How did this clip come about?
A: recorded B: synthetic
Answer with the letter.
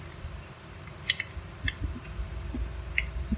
A